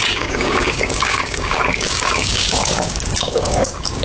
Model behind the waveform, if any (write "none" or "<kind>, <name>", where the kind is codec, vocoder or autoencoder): codec, DAC